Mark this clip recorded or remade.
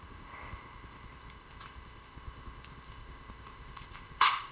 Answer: remade